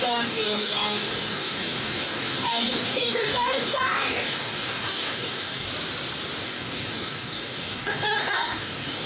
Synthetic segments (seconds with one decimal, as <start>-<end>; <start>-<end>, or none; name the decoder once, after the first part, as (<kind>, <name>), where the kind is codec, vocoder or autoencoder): 0.0-5.7 (codec, DAC); 6.4-9.1